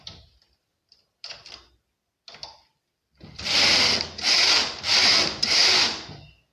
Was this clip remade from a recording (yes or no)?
no